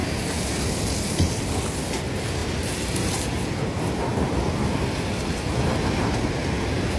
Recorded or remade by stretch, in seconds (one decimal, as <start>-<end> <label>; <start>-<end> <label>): 0.0-1.4 remade; 1.4-2.4 recorded; 2.4-5.6 remade; 5.6-7.0 recorded